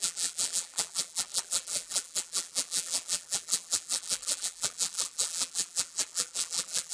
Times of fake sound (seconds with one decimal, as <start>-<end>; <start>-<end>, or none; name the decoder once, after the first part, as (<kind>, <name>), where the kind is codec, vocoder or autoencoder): 0.0-6.9 (vocoder, BigVGAN v2)